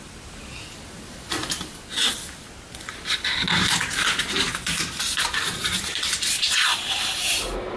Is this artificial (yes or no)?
no